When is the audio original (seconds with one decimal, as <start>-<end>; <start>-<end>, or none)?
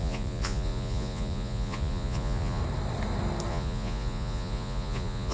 2.6-3.5